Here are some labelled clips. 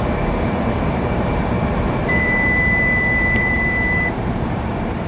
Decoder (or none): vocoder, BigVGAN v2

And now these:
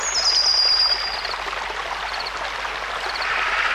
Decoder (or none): none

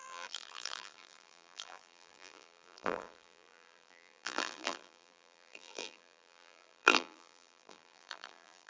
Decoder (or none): vocoder, BigVGAN v2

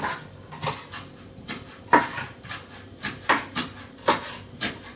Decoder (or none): none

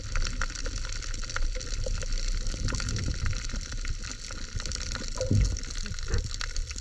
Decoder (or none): none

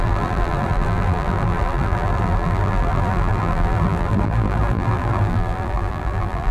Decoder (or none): vocoder, BigVGAN v2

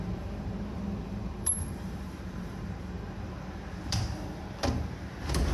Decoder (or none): vocoder, BigVGAN v2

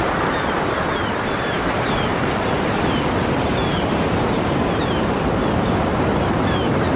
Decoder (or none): vocoder, BigVGAN v2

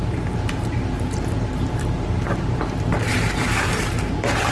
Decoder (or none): vocoder, BigVGAN v2